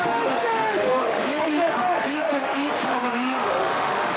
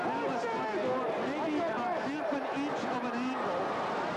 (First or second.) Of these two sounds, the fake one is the first